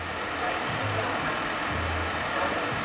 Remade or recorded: recorded